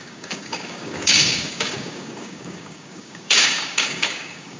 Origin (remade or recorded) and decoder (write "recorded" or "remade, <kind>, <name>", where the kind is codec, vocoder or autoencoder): remade, codec, DAC